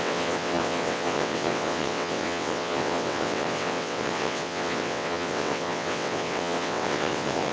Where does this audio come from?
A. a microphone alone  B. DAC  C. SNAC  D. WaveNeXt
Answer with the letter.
D